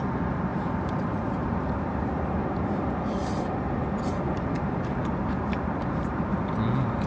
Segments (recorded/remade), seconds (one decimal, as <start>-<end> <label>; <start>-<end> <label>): 0.0-0.5 recorded; 0.5-2.6 remade; 2.6-3.2 recorded; 3.2-6.4 remade; 6.4-7.1 recorded